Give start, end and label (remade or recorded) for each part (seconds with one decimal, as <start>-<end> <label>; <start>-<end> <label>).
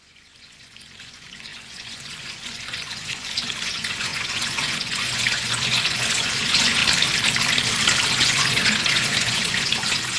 0.0-6.8 remade; 6.8-8.1 recorded; 8.1-10.2 remade